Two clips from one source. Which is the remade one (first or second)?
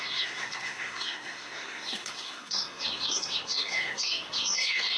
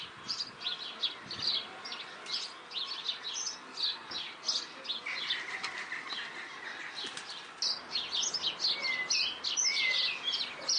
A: first